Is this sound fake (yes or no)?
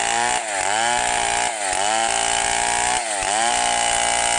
no